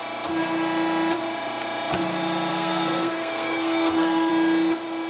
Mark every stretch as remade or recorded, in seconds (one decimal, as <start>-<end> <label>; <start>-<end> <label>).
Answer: 0.0-2.5 recorded; 2.5-4.3 remade; 4.3-5.1 recorded